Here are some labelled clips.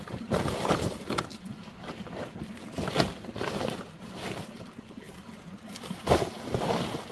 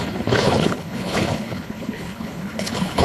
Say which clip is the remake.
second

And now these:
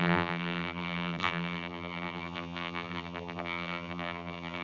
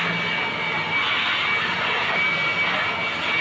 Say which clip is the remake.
first